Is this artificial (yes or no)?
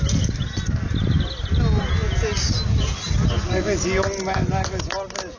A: no